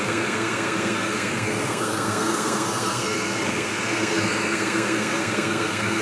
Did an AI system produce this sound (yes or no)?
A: yes